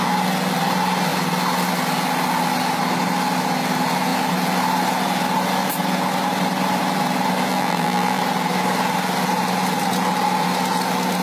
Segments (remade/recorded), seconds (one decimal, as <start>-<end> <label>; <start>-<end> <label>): 0.0-7.5 recorded; 7.5-8.2 remade; 8.2-11.2 recorded